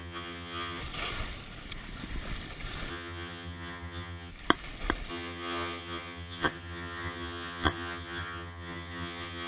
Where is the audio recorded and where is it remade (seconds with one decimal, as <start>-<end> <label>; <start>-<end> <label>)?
0.0-0.8 remade; 0.8-2.9 recorded; 2.9-4.3 remade; 4.3-5.1 recorded; 5.1-9.5 remade